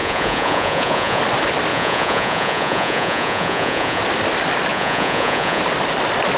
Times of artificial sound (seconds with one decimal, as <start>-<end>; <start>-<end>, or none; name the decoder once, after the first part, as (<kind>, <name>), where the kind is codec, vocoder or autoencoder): 0.0-1.2 (vocoder, Vocos); 1.7-4.0; 4.7-5.6